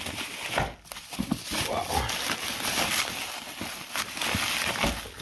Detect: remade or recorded recorded